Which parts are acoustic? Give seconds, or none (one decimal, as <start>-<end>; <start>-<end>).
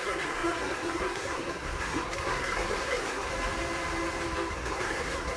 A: 3.3-4.5